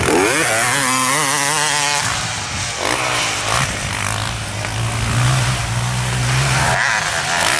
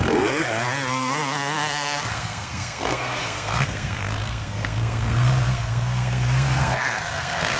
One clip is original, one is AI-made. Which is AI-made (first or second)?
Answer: second